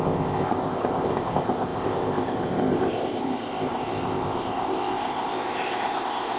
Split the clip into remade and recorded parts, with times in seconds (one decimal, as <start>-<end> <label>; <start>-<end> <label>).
0.0-6.4 remade